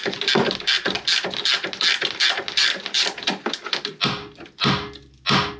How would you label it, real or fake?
real